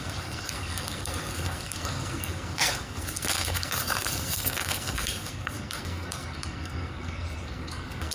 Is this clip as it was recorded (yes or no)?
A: no